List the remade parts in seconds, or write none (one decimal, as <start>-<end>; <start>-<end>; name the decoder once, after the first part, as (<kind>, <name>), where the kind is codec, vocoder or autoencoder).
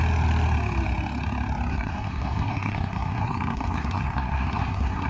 1.7-5.1 (codec, SNAC)